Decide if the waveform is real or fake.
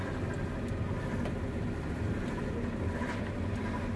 real